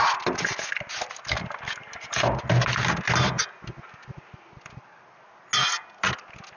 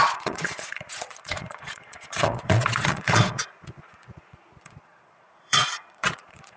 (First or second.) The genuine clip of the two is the first